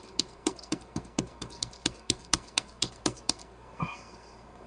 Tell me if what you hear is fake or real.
fake